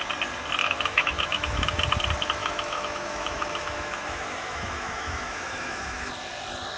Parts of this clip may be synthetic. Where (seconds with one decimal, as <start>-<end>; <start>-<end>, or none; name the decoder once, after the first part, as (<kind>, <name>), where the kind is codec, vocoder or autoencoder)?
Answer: 0.6-1.8 (autoencoder, DAC-VAE); 2.4-6.1